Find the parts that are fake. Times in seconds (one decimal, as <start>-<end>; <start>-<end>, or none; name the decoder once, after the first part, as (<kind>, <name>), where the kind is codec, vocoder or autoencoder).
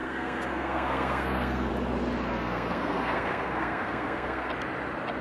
0.0-1.7 (codec, SNAC); 2.3-4.5